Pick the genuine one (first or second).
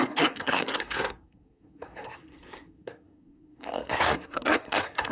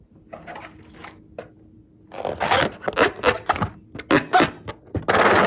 second